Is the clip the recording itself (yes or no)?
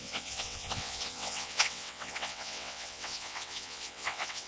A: no